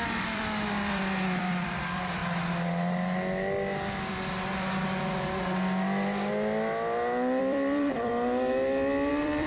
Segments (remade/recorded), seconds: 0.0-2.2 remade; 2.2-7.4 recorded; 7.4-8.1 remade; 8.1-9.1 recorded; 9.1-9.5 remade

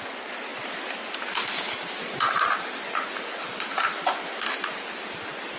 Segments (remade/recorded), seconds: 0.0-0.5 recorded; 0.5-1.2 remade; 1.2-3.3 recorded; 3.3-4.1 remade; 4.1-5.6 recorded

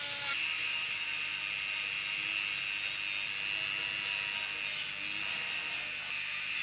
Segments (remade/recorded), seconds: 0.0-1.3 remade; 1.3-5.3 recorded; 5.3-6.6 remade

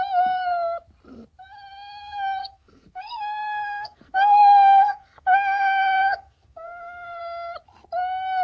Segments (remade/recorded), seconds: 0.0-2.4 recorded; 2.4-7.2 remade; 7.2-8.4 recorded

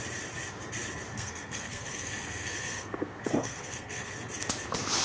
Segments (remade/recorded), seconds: 0.0-1.1 recorded; 1.1-4.1 remade; 4.1-5.0 recorded

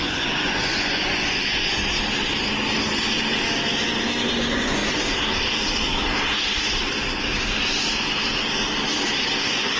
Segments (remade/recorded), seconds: 0.0-1.8 remade; 1.8-4.3 recorded; 4.3-4.8 remade; 4.8-9.4 recorded; 9.4-9.8 remade

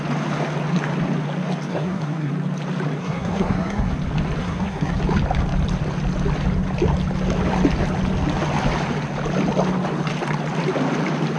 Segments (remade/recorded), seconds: 0.0-1.7 recorded; 1.7-2.3 remade; 2.3-3.0 recorded; 3.0-3.9 remade; 3.9-4.4 recorded; 4.4-5.0 remade; 5.0-11.4 recorded

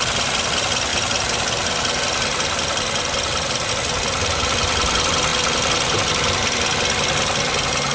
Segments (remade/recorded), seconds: 0.0-7.9 recorded